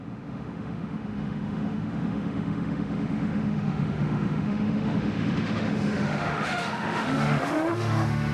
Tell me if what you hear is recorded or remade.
remade